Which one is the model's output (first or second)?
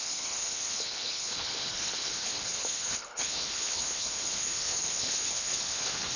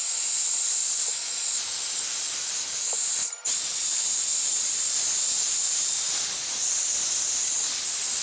first